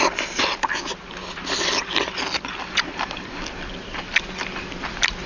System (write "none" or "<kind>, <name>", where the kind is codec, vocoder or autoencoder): none